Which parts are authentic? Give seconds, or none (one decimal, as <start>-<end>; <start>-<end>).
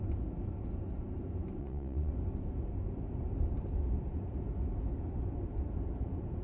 0.0-1.6; 2.1-6.4